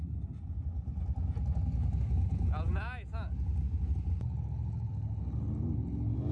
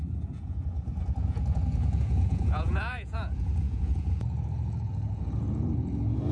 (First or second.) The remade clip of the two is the second